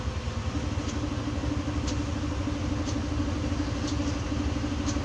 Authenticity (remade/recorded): recorded